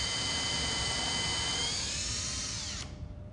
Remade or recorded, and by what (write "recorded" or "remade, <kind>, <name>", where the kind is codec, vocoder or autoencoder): remade, vocoder, BigVGAN v2